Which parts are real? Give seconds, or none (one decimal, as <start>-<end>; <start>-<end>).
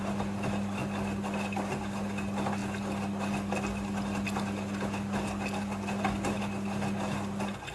0.0-7.7